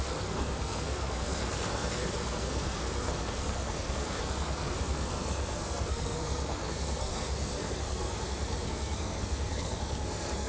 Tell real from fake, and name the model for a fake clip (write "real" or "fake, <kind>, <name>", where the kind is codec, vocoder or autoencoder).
fake, codec, SNAC